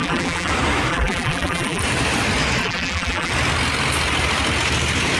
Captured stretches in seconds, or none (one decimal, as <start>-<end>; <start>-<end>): 0.5-0.9; 1.8-2.6; 3.3-5.2